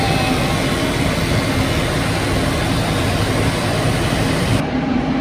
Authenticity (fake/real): fake